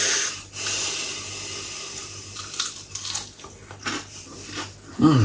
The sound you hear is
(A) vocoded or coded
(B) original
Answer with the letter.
B